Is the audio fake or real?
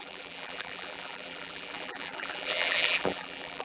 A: fake